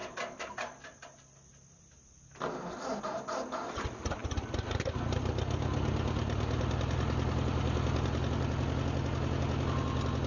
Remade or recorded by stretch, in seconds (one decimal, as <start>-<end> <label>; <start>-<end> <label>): 0.0-10.3 recorded